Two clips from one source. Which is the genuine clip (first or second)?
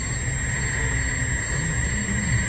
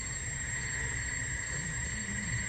first